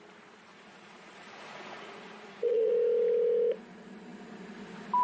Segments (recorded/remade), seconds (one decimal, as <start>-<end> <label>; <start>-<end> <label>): 0.0-0.5 recorded; 0.5-2.7 remade; 2.7-5.0 recorded

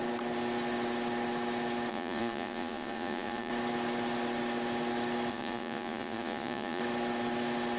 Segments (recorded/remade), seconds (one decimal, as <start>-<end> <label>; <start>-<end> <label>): 0.0-1.9 recorded; 1.9-3.5 remade; 3.5-5.3 recorded; 5.3-6.8 remade; 6.8-7.8 recorded